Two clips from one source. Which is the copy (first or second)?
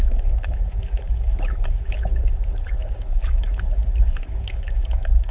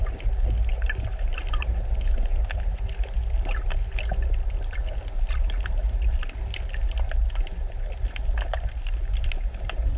first